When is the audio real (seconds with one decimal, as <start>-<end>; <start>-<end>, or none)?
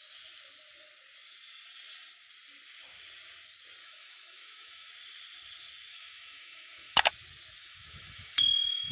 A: 0.0-3.8; 4.9-5.9; 7.1-7.6